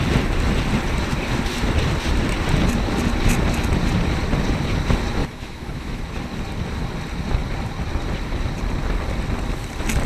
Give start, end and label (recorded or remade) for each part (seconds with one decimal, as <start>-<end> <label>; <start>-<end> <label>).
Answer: 0.0-5.2 recorded; 5.2-6.0 remade; 6.0-10.1 recorded